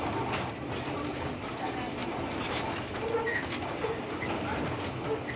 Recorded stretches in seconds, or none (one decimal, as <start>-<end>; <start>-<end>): 0.0-3.3; 4.2-5.4